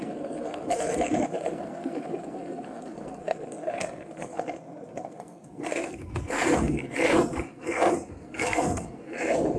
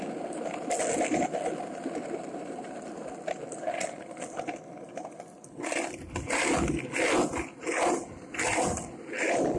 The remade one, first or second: first